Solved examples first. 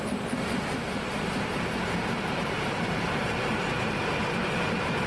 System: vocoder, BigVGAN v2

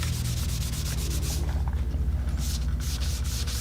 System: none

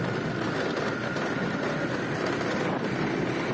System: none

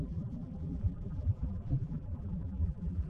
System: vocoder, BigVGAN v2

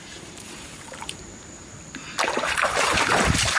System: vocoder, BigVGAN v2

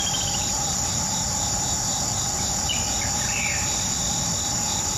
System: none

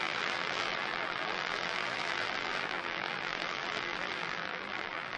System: vocoder, BigVGAN v2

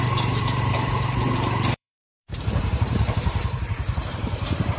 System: vocoder, BigVGAN v2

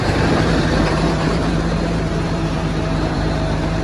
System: vocoder, BigVGAN v2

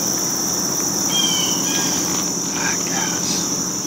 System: none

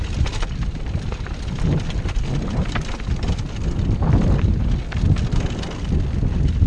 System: none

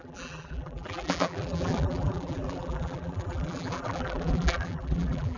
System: vocoder, BigVGAN v2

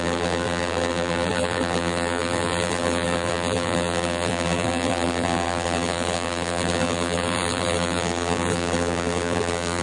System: vocoder, BigVGAN v2